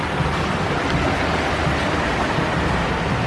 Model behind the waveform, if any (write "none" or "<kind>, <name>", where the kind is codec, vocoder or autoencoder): none